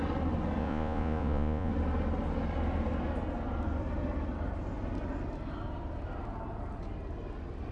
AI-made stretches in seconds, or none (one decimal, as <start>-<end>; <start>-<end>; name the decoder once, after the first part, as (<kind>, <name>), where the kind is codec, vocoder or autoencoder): 0.6-1.7 (vocoder, Vocos)